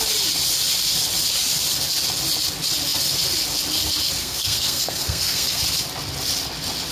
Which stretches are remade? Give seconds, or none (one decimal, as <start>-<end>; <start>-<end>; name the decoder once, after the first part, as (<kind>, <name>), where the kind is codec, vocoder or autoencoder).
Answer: 4.2-5.6 (codec, SNAC)